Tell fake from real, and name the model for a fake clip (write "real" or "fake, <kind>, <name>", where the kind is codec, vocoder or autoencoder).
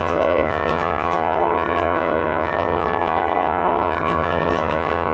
fake, vocoder, HiFi-GAN